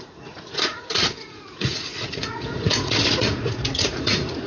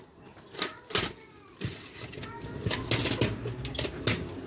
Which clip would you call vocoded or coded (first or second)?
first